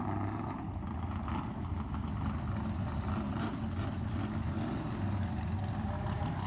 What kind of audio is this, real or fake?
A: real